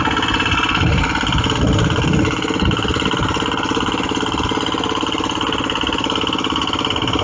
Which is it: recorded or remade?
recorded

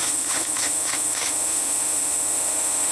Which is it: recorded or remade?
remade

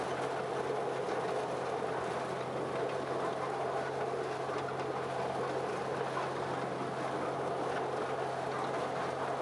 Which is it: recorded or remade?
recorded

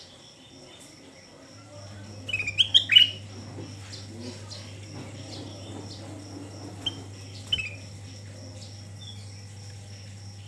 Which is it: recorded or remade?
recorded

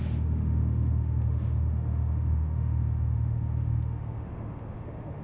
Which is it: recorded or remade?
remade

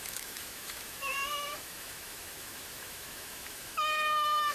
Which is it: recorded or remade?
remade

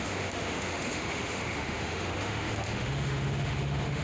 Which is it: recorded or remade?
remade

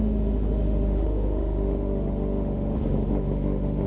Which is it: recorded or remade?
remade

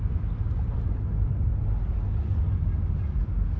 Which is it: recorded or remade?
recorded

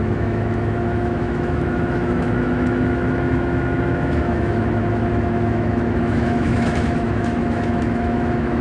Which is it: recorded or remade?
remade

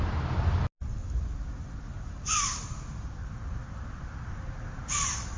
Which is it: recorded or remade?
recorded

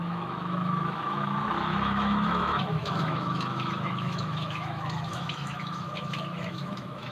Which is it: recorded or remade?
remade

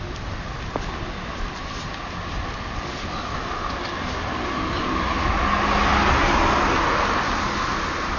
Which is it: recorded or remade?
recorded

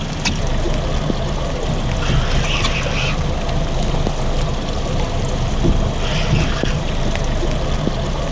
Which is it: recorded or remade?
recorded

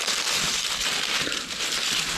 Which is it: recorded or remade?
recorded